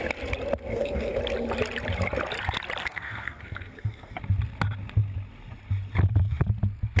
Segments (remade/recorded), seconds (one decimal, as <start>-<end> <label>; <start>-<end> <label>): 0.0-0.7 recorded; 0.7-1.2 remade; 1.2-2.8 recorded; 2.8-4.2 remade; 4.2-7.0 recorded

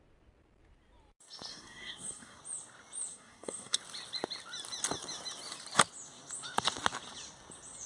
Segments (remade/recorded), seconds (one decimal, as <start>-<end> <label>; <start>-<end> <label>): 0.0-1.5 recorded; 1.5-2.4 remade; 2.4-3.1 recorded; 3.1-3.8 remade; 3.8-7.9 recorded

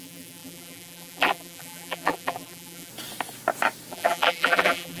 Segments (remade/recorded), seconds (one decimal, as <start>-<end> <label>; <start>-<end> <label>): 0.0-2.9 remade; 2.9-3.9 recorded; 3.9-5.0 remade

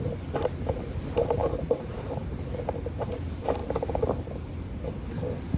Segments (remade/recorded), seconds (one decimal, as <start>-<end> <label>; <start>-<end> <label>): 0.0-5.6 recorded

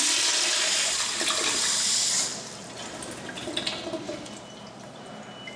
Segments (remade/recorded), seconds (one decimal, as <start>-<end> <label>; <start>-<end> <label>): 0.0-2.3 recorded; 2.3-2.8 remade; 2.8-5.6 recorded

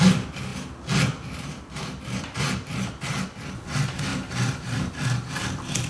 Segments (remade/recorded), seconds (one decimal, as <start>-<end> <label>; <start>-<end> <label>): 0.0-4.1 recorded; 4.1-4.9 remade; 4.9-5.9 recorded